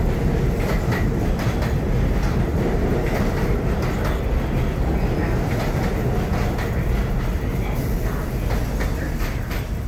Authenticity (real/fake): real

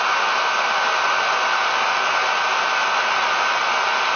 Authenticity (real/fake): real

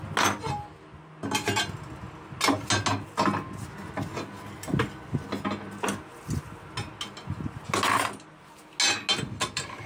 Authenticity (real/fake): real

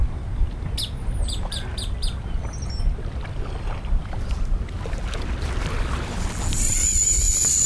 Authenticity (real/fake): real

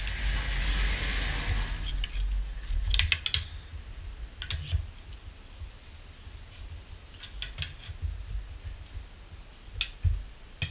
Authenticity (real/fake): real